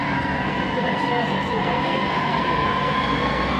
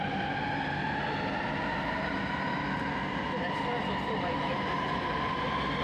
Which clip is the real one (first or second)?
second